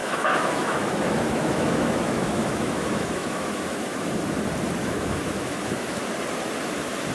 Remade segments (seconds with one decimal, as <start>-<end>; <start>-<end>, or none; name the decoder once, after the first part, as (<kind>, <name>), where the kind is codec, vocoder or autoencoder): 0.0-4.1 (autoencoder, DAC-VAE); 4.8-6.0